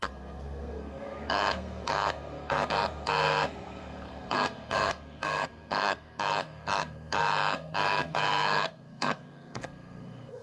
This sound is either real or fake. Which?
fake